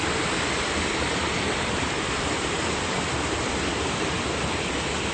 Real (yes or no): yes